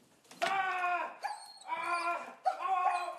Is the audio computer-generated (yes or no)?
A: no